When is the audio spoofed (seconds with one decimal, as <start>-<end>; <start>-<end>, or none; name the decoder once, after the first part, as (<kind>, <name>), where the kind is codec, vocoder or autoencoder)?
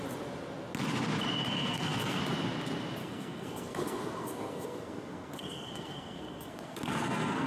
1.4-2.2 (codec, SNAC); 3.0-7.5